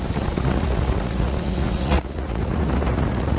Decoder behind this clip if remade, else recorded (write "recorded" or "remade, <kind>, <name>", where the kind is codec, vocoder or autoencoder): remade, vocoder, Vocos